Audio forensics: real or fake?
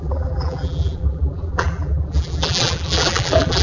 fake